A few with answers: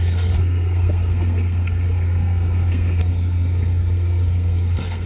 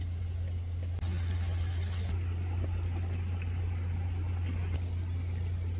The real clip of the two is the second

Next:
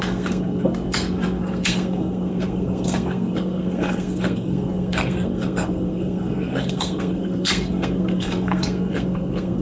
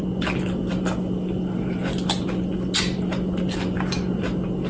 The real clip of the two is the second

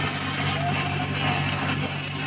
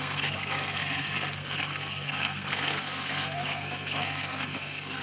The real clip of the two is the first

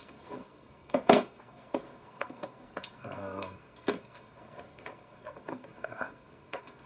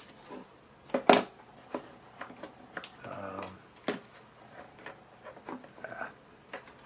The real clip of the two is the second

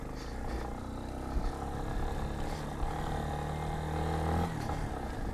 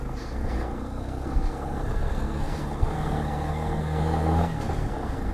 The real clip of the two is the first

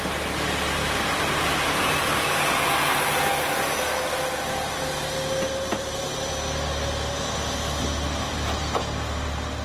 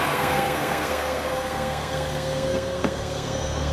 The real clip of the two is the first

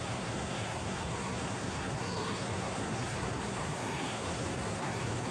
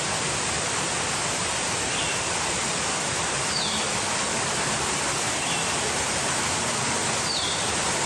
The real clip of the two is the second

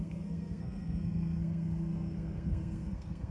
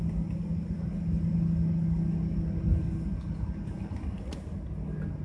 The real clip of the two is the second